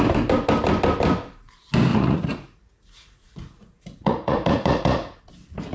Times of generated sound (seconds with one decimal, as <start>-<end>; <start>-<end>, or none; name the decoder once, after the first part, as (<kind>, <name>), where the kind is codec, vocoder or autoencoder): 1.9-5.3 (vocoder, Vocos)